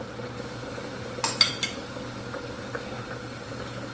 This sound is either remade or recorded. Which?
recorded